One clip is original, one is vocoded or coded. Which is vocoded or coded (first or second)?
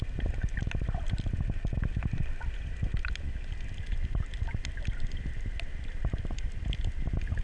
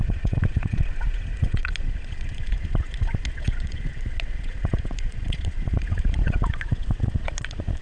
second